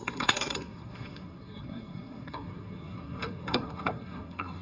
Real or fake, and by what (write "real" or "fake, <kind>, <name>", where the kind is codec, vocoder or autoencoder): fake, codec, SNAC